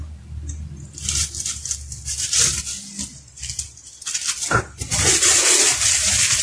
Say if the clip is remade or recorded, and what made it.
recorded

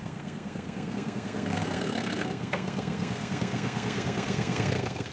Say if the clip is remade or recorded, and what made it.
remade, codec, SNAC